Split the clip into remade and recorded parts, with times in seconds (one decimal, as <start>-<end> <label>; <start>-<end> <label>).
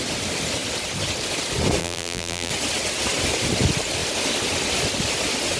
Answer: 0.0-1.8 recorded; 1.8-2.5 remade; 2.5-5.6 recorded